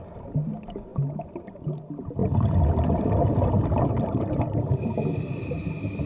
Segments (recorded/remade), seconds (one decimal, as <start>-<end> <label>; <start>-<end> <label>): 0.0-0.9 remade; 0.9-1.5 recorded; 1.5-6.1 remade